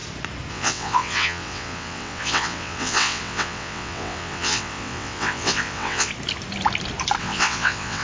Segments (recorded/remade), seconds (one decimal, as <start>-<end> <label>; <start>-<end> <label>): 0.0-0.5 recorded; 0.5-6.1 remade; 6.1-7.2 recorded; 7.2-8.0 remade

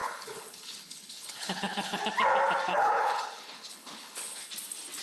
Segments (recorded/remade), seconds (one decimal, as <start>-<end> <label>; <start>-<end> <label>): 0.0-2.0 remade; 2.0-2.7 recorded; 2.7-4.5 remade; 4.5-5.0 recorded

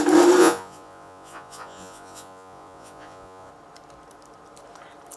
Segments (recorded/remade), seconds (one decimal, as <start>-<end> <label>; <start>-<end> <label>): 0.0-0.4 recorded; 0.4-3.5 remade; 3.5-5.2 recorded